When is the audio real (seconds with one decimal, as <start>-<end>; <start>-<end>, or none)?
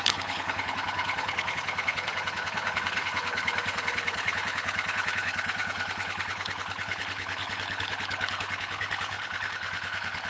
none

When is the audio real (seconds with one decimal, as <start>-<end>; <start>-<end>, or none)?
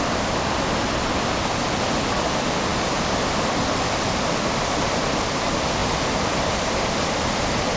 0.0-7.8